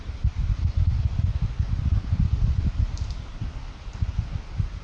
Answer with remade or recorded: recorded